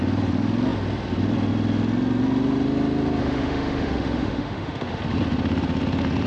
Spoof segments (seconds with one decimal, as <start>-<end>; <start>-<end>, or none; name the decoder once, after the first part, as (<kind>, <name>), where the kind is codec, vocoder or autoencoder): 3.2-5.0 (autoencoder, DAC-VAE)